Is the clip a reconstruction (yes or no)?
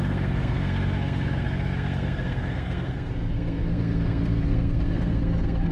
yes